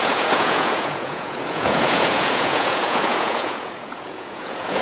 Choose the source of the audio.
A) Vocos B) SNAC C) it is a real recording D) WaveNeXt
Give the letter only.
A